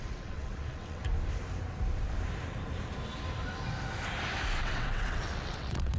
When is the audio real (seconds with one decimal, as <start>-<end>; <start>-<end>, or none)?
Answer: 1.0-4.6